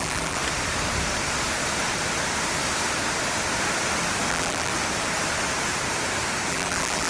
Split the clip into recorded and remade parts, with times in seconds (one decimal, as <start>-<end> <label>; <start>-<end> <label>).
0.0-0.4 remade; 0.4-4.3 recorded; 4.3-4.7 remade; 4.7-6.5 recorded; 6.5-7.1 remade